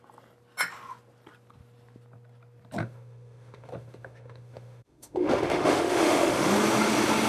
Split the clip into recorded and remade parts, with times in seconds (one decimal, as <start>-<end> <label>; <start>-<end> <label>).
0.0-2.8 recorded; 2.8-6.5 remade; 6.5-7.3 recorded

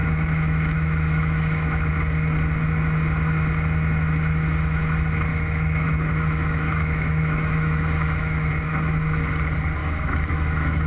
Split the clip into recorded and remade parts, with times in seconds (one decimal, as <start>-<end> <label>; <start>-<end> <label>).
0.0-1.9 remade; 1.9-5.3 recorded; 5.3-8.5 remade; 8.5-9.8 recorded; 9.8-10.9 remade